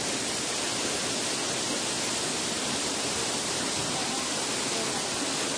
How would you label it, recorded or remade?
recorded